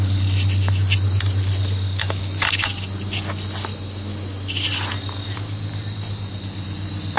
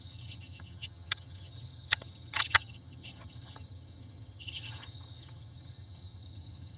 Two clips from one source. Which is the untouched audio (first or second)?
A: first